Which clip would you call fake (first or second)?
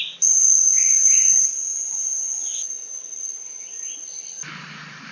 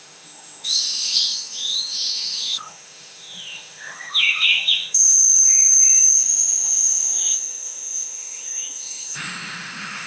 second